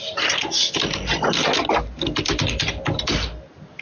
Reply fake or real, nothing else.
real